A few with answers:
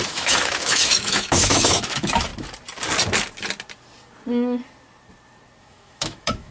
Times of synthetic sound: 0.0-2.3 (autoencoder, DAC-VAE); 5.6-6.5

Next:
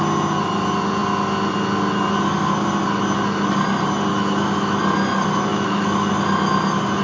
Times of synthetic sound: 4.1-4.8 (autoencoder, DAC-VAE); 5.5-6.1

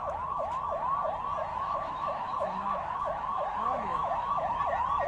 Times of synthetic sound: 0.0-0.6 (autoencoder, DAC-VAE); 1.5-4.6

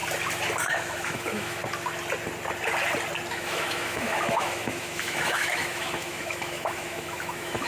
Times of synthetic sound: 0.6-1.6 (autoencoder, DAC-VAE); 3.3-7.7